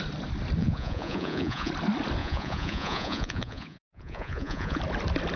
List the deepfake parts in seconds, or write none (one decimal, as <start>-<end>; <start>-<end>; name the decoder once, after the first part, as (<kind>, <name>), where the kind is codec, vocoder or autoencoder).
0.6-1.7 (vocoder, Vocos); 2.2-4.8